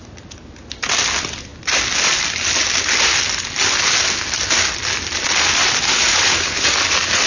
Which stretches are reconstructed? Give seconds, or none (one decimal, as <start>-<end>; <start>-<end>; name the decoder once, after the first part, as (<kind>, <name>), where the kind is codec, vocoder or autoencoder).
6.1-6.7 (vocoder, BigVGAN v2)